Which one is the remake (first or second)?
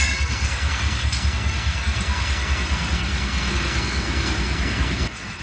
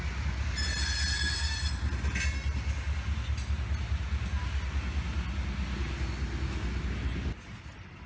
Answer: first